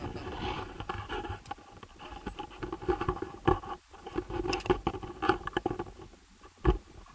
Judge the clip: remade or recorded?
recorded